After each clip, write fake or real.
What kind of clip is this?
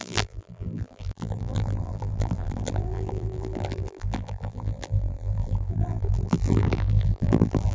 fake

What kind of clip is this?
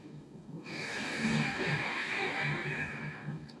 fake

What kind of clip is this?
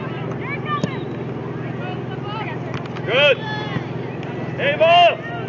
real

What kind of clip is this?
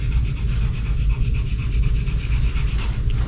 real